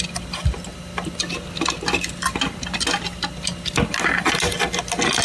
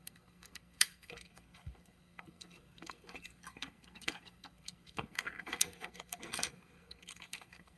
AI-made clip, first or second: second